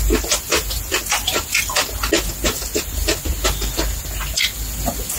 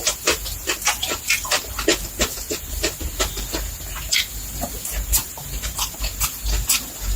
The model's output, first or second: second